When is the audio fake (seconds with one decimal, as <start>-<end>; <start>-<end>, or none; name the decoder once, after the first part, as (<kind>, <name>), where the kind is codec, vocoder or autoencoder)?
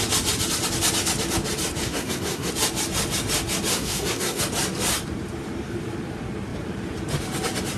1.8-2.5 (codec, SNAC); 3.7-4.4